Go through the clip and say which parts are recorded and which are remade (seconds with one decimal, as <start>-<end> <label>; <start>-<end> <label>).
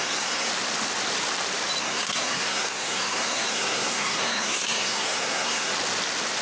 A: 0.0-0.5 remade; 0.5-1.8 recorded; 1.8-5.7 remade; 5.7-6.4 recorded